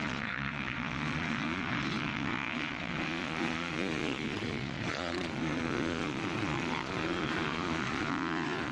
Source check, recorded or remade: remade